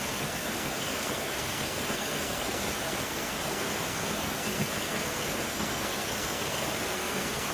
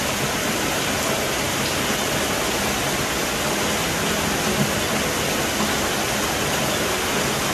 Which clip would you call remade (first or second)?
first